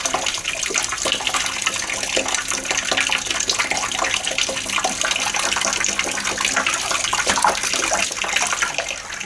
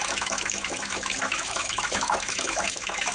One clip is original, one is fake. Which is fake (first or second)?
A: second